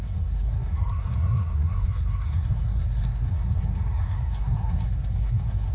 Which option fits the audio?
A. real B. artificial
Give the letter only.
B